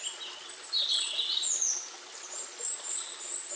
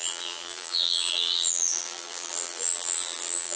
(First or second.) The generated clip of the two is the second